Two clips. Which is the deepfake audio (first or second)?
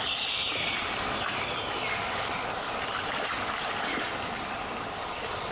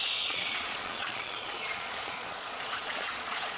second